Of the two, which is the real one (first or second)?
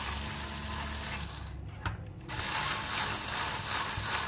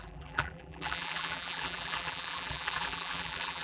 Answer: first